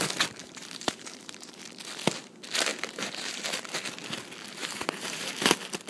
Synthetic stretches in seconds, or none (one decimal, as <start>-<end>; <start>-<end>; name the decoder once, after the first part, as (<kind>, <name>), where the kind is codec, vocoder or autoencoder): 0.4-1.6 (vocoder, BigVGAN v2); 2.7-3.4; 4.6-5.3